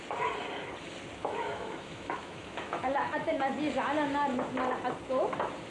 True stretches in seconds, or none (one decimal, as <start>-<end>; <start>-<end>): 0.0-1.2; 3.4-5.7